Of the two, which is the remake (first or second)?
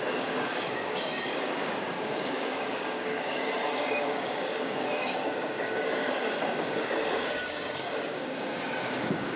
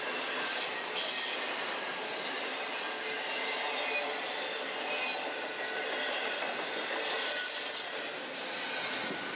first